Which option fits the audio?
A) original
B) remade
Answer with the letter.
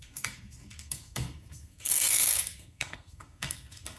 B